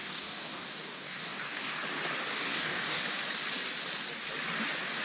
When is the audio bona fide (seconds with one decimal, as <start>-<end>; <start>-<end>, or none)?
1.8-2.3; 3.0-5.0